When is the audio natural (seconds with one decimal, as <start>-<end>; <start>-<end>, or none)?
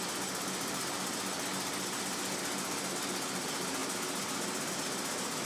0.0-5.4